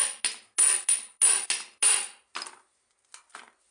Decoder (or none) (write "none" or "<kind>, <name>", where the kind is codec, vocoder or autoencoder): none